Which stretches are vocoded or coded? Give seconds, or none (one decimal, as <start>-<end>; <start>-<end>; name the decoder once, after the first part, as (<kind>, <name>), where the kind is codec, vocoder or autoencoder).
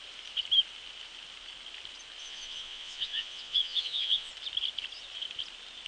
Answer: 2.2-4.3 (vocoder, Vocos)